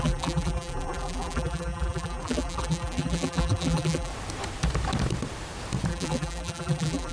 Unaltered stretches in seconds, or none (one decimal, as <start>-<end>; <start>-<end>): 4.1-5.9